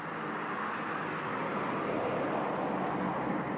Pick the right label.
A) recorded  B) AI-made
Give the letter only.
A